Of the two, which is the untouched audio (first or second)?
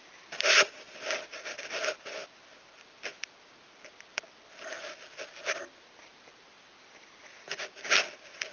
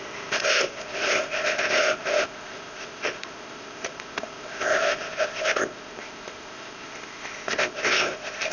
first